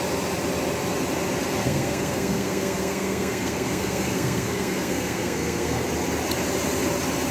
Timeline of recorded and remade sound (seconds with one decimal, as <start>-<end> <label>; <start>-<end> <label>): 0.0-1.6 recorded; 1.6-5.8 remade; 5.8-7.3 recorded